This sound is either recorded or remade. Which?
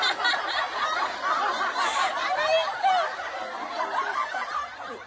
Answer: recorded